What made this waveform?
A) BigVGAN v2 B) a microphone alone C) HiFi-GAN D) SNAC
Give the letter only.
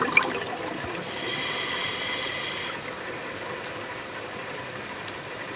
A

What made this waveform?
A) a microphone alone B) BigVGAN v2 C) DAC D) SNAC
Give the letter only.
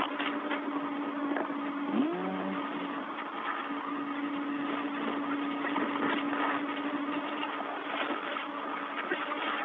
A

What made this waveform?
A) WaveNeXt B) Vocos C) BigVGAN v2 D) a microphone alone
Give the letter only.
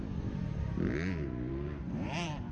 C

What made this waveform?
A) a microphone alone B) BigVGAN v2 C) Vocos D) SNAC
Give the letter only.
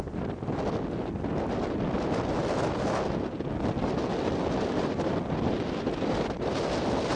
A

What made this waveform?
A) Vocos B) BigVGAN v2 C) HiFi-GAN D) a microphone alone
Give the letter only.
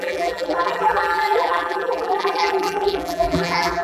B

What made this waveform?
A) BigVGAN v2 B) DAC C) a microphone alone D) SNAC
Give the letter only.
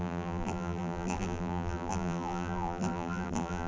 A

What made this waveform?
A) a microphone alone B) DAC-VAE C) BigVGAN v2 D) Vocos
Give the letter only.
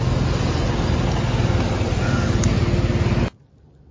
A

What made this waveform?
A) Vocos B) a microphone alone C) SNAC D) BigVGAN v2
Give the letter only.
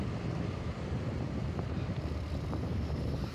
D